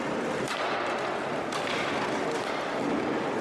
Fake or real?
real